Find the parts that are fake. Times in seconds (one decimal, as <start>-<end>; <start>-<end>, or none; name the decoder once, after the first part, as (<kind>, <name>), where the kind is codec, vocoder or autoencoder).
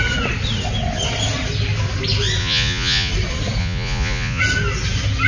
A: 2.4-3.1 (vocoder, Vocos); 3.6-4.4